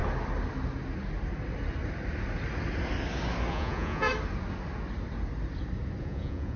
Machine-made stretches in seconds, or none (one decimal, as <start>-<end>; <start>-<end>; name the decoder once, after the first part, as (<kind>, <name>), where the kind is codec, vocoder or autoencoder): 3.5-4.1 (vocoder, Vocos); 6.0-6.6